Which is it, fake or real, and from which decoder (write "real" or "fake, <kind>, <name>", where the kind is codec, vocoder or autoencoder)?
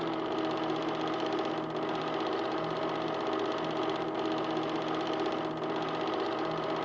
real